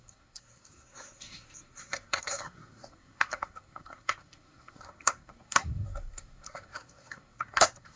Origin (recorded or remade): remade